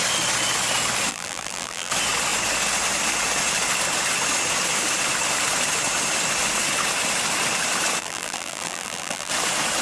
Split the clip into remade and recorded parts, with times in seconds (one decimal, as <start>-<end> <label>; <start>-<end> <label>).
0.0-1.1 recorded; 1.1-1.9 remade; 1.9-8.0 recorded; 8.0-9.3 remade; 9.3-9.8 recorded